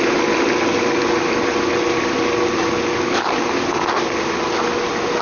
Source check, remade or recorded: recorded